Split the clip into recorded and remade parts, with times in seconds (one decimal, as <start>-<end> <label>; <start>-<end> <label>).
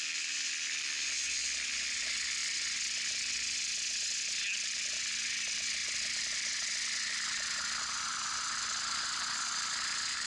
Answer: 0.0-10.3 recorded